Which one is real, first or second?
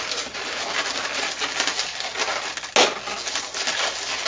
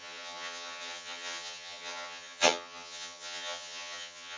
first